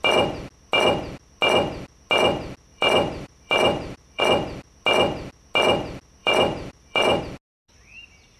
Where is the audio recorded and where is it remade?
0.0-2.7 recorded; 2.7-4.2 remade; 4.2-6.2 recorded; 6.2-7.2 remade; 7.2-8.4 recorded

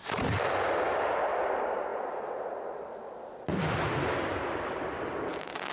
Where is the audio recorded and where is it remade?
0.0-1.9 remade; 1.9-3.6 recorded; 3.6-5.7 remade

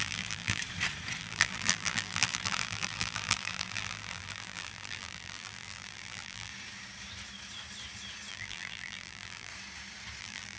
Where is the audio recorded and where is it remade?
0.0-0.6 remade; 0.6-1.2 recorded; 1.2-6.5 remade; 6.5-8.3 recorded; 8.3-9.5 remade; 9.5-10.2 recorded; 10.2-10.6 remade

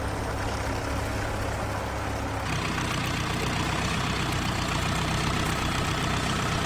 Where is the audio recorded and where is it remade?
0.0-4.8 recorded; 4.8-6.7 remade